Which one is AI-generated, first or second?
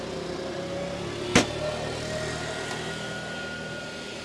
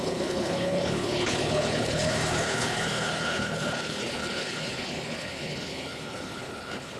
second